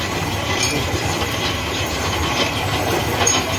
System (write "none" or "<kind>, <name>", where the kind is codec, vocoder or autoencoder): vocoder, BigVGAN v2